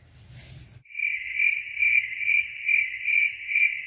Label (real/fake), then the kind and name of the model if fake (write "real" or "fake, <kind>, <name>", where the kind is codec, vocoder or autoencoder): real